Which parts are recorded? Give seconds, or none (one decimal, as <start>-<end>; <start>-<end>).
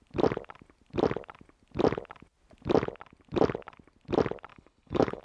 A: 0.0-4.5